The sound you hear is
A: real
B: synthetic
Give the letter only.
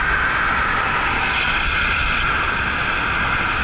A